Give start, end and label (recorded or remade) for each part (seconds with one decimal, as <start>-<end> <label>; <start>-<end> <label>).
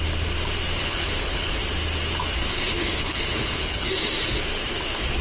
0.0-0.8 recorded; 0.8-1.6 remade; 1.6-2.5 recorded; 2.5-3.9 remade; 3.9-5.2 recorded